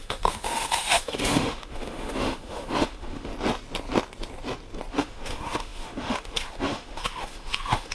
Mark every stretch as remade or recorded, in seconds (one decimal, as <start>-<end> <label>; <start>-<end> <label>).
0.0-3.3 remade; 3.3-4.9 recorded; 4.9-7.9 remade